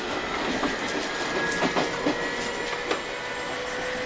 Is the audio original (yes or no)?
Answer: yes